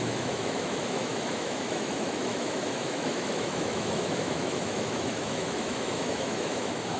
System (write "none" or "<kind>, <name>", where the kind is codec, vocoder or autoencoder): autoencoder, DAC-VAE